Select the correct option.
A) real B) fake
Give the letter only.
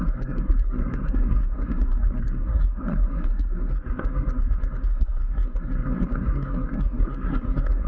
B